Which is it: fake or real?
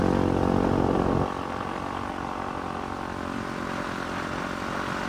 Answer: real